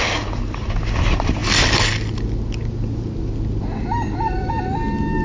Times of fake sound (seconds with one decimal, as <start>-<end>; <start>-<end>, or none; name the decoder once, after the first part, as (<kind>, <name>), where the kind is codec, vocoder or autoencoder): none